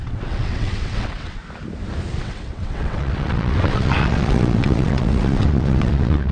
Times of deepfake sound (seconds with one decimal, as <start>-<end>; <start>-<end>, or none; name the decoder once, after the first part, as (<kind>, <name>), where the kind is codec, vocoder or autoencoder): 0.0-1.4 (vocoder, WaveNeXt); 2.2-6.3